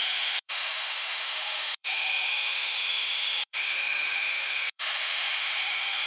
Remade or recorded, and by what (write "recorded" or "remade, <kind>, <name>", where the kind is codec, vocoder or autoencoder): remade, autoencoder, DAC-VAE